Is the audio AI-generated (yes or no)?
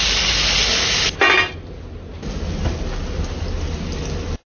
no